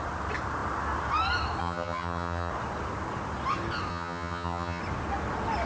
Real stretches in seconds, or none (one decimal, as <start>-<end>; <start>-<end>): 0.0-1.6; 2.5-3.9; 4.8-5.7

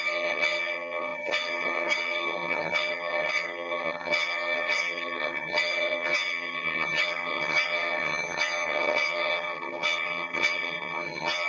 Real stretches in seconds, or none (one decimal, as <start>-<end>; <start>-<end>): none

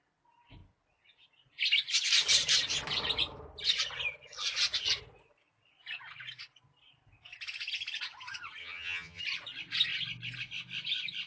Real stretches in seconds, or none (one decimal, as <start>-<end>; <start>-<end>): 0.0-8.6; 9.2-11.3

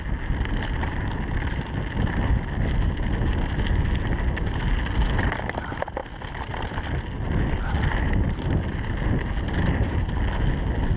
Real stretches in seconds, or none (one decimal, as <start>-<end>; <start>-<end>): 0.0-11.0